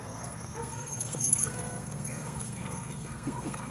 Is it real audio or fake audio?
fake